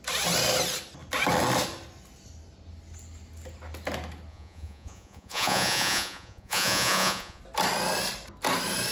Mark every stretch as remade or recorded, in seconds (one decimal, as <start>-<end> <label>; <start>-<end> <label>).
0.0-4.3 recorded; 4.3-7.4 remade; 7.4-8.9 recorded